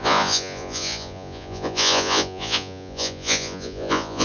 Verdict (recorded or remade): remade